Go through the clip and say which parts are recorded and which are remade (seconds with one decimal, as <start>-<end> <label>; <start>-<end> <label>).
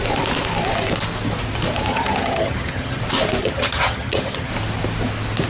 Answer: 0.0-1.9 recorded; 1.9-3.0 remade; 3.0-3.4 recorded; 3.4-4.5 remade; 4.5-5.5 recorded